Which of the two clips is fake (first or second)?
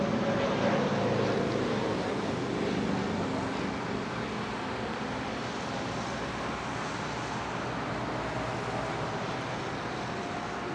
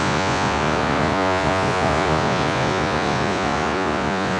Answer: second